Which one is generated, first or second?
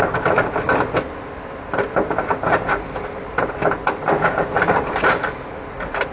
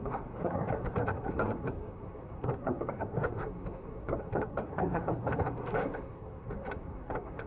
second